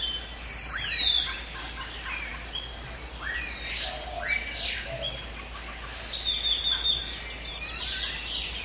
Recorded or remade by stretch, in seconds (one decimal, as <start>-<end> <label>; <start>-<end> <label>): 0.0-8.6 recorded